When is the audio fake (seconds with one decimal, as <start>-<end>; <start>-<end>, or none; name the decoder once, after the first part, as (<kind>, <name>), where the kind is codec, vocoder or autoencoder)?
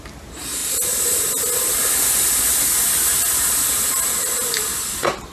none